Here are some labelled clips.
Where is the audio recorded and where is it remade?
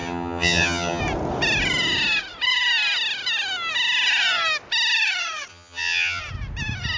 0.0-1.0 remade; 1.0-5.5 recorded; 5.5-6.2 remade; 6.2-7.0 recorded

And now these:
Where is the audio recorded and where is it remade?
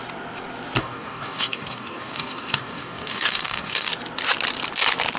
0.0-0.8 recorded; 0.8-3.9 remade; 3.9-5.2 recorded